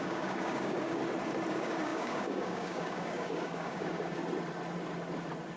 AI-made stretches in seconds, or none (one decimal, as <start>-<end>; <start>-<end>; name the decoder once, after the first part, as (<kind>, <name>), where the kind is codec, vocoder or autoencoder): 0.0-1.0 (codec, DAC); 1.5-4.2